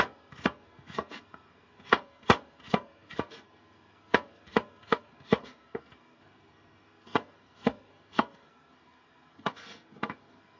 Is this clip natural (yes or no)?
no